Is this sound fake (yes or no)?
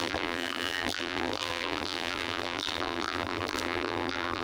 yes